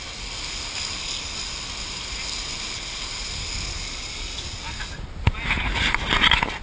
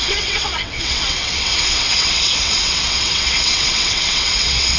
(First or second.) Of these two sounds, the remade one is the second